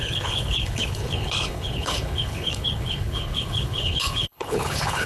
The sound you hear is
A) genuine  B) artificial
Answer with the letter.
B